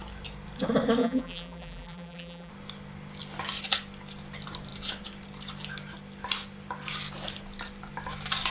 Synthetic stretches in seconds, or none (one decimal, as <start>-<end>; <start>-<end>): 1.0-2.5